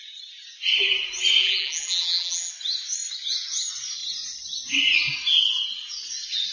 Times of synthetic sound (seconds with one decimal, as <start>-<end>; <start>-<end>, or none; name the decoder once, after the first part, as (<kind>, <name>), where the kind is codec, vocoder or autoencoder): 1.4-2.5 (vocoder, BigVGAN v2)